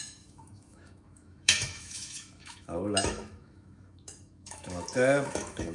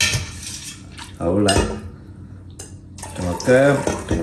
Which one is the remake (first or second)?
first